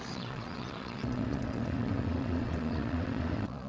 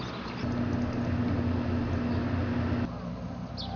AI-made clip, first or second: first